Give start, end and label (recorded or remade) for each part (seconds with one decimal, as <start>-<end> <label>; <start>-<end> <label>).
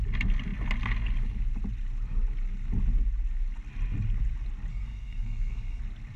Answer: 0.0-4.7 recorded; 4.7-5.8 remade; 5.8-6.2 recorded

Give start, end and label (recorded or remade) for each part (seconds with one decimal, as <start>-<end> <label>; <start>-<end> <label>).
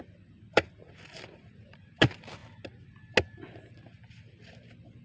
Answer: 0.0-2.4 remade; 2.4-5.0 recorded